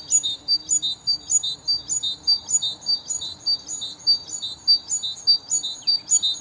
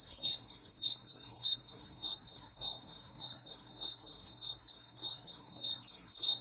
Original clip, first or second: first